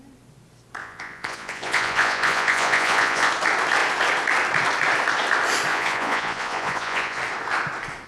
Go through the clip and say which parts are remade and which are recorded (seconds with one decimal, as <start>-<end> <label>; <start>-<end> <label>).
0.0-0.8 recorded; 0.8-3.3 remade; 3.3-5.7 recorded; 5.7-7.2 remade; 7.2-8.1 recorded